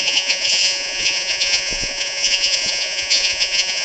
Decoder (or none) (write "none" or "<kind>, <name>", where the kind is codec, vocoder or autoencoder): vocoder, Vocos